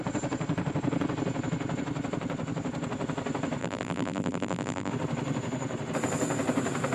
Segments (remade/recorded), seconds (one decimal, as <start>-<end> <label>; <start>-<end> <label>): 0.0-3.6 recorded; 3.6-4.9 remade; 4.9-6.9 recorded